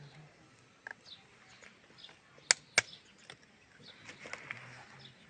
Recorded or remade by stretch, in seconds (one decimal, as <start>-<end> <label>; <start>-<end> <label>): 0.0-5.3 recorded